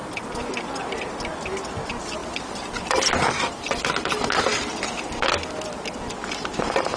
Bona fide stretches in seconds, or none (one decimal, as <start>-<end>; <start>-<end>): 0.5-7.0